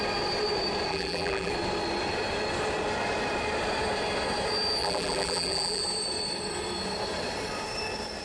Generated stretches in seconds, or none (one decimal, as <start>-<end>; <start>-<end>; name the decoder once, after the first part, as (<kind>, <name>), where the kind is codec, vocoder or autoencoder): 0.9-1.5 (vocoder, BigVGAN v2); 4.8-5.8